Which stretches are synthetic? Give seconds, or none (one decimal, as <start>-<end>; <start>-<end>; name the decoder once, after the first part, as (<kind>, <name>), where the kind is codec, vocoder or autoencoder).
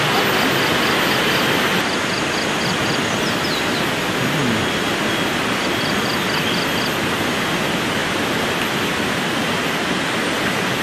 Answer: none